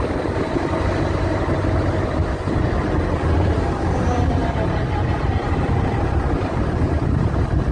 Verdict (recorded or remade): recorded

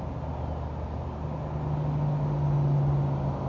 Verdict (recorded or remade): recorded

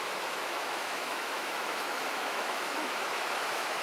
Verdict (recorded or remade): remade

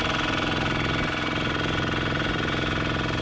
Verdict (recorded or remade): recorded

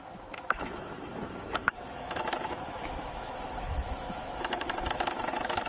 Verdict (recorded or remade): remade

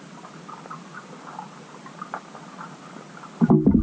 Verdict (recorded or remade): recorded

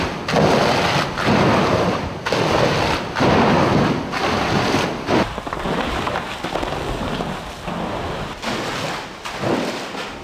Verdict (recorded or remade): recorded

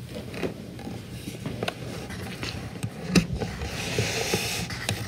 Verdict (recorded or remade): recorded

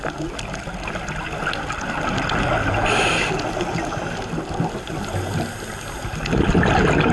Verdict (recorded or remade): recorded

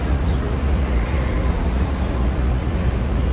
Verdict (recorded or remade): remade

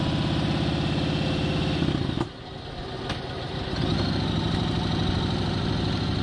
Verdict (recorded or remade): recorded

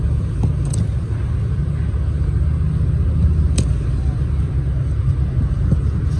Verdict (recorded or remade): recorded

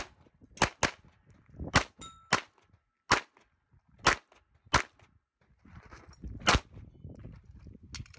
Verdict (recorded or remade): recorded